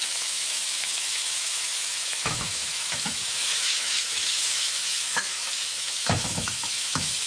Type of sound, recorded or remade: remade